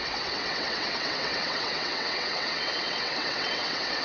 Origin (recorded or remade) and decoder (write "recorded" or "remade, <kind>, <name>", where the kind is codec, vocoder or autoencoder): remade, vocoder, WaveNeXt